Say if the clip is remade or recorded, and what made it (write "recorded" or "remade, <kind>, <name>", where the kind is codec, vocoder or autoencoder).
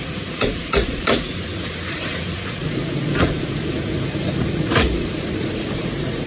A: remade, vocoder, Vocos